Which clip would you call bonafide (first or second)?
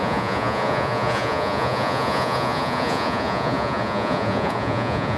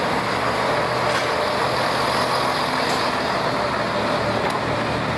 second